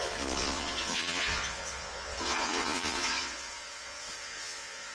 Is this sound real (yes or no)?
no